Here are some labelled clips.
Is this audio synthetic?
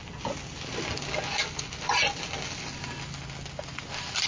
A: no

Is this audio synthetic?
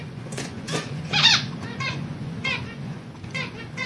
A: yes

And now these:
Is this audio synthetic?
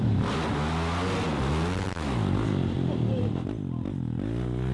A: no